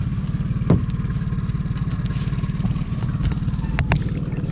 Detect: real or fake real